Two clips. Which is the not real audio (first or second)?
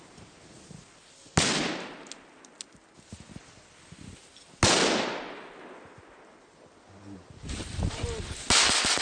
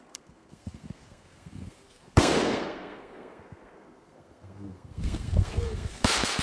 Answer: second